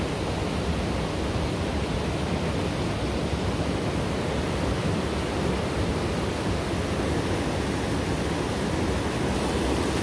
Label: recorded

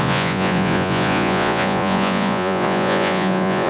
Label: remade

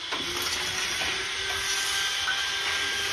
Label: recorded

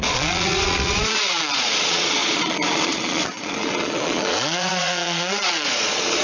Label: remade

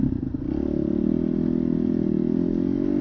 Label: recorded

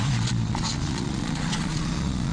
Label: remade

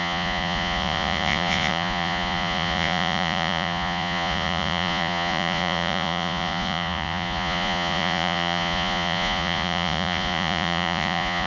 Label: remade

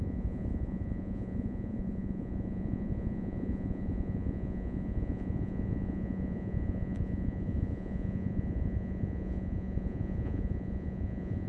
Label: remade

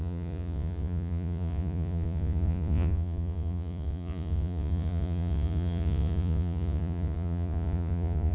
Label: remade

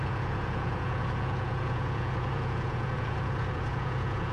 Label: remade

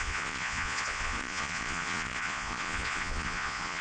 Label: remade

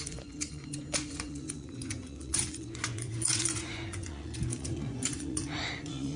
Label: remade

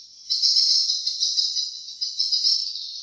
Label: recorded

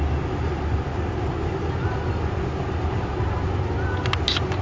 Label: recorded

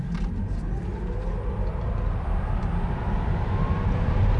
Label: recorded